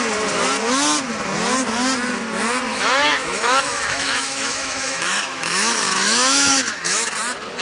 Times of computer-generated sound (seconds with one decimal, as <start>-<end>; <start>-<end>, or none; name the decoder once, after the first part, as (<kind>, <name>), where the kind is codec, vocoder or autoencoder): 2.7-7.1 (autoencoder, DAC-VAE)